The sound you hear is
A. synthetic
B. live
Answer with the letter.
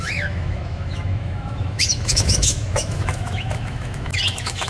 A